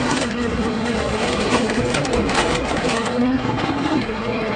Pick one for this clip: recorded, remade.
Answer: remade